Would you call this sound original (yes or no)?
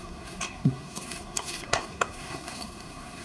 no